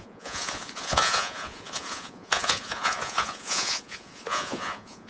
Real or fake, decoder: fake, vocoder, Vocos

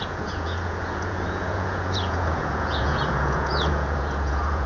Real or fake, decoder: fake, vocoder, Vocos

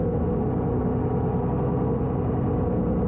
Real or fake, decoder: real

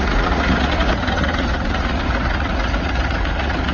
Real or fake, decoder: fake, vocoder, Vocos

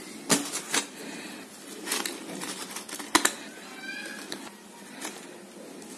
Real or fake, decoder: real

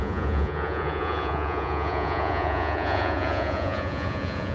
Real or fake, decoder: fake, vocoder, Vocos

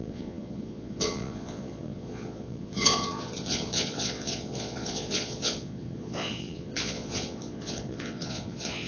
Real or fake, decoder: fake, vocoder, Vocos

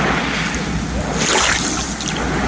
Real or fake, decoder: real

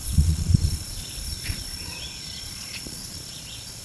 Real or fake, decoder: fake, vocoder, Vocos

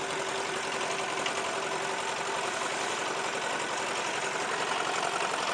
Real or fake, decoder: real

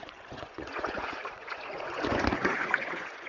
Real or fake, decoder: fake, vocoder, Vocos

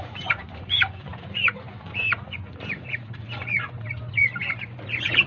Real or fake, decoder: fake, vocoder, Vocos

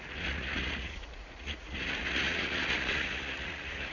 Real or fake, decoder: fake, vocoder, Vocos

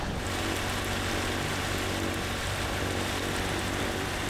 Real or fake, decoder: real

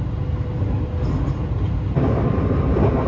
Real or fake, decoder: real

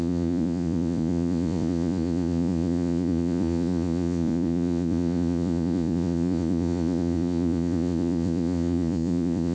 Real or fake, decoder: fake, vocoder, Vocos